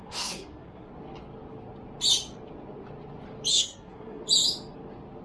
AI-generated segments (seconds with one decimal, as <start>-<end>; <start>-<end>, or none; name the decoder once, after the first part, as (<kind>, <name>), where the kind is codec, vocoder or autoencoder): 0.0-0.9 (codec, SNAC); 3.5-4.2